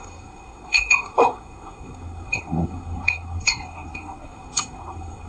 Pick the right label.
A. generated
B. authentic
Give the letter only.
A